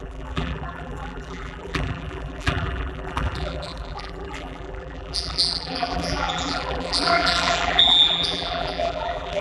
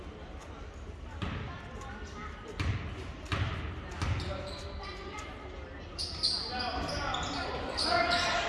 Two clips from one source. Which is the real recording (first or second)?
second